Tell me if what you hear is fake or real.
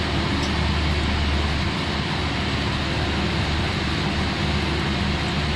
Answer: real